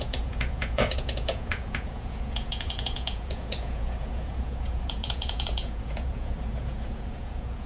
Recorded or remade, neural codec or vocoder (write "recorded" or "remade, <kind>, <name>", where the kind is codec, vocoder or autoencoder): remade, vocoder, Vocos